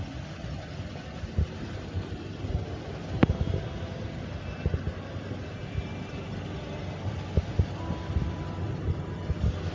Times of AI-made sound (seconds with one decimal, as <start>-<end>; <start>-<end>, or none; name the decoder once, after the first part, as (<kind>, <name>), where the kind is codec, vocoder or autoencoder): none